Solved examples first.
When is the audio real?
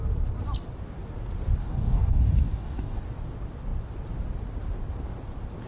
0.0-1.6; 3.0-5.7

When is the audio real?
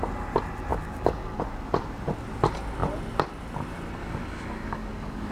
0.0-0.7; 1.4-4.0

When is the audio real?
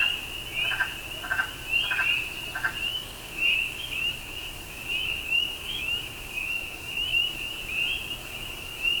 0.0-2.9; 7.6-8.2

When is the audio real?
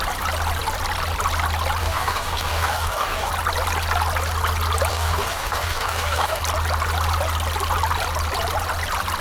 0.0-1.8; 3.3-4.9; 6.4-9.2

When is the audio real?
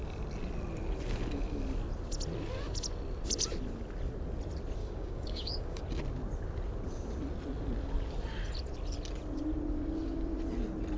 0.0-4.8; 5.8-11.0